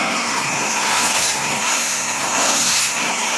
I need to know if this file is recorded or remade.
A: remade